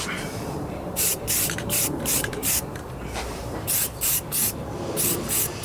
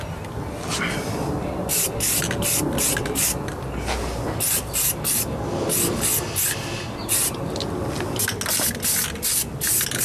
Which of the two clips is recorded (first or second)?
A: second